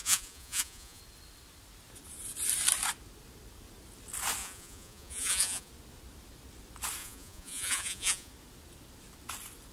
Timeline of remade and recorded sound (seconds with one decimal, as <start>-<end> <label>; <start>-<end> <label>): 0.0-1.0 remade; 1.0-4.4 recorded; 4.4-5.7 remade; 5.7-7.0 recorded; 7.0-8.3 remade; 8.3-9.7 recorded